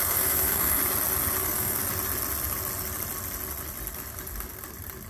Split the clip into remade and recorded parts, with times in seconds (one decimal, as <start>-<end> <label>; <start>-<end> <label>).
0.0-0.8 remade; 0.8-1.4 recorded; 1.4-1.8 remade; 1.8-5.1 recorded